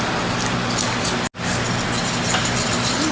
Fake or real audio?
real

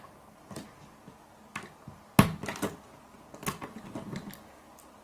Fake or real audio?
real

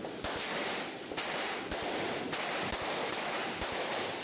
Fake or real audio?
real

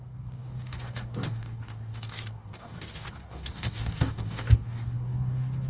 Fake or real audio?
fake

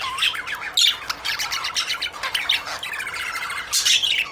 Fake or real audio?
real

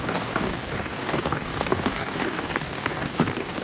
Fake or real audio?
fake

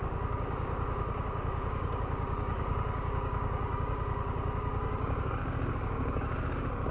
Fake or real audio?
fake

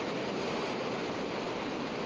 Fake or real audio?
real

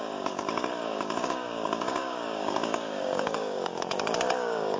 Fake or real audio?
fake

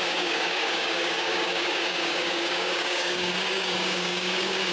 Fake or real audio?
fake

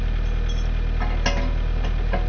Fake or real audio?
real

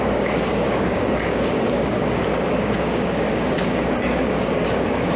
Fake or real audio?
fake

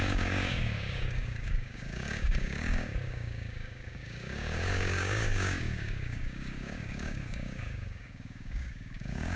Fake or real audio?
fake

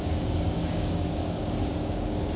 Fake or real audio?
fake